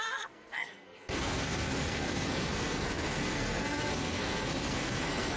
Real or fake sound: fake